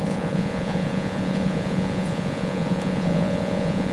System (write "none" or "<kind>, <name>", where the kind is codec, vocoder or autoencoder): vocoder, Vocos